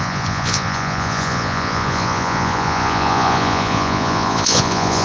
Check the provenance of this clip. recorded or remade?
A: remade